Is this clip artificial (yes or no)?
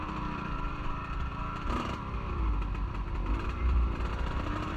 yes